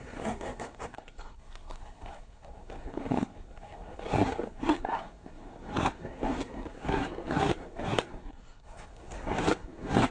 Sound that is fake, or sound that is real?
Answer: fake